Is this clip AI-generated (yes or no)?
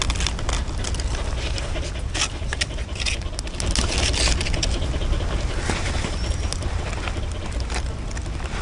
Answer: no